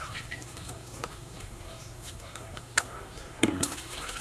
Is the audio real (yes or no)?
no